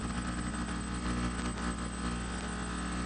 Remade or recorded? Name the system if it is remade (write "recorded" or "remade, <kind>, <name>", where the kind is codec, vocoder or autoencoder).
recorded